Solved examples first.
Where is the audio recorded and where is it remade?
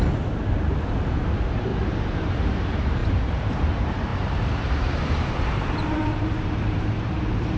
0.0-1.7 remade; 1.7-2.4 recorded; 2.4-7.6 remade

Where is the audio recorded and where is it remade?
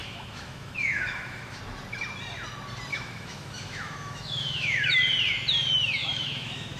0.0-1.6 remade; 1.6-2.9 recorded; 2.9-5.0 remade; 5.0-6.0 recorded; 6.0-6.8 remade